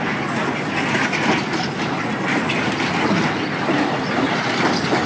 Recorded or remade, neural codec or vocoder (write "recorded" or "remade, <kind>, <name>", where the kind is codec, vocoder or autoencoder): recorded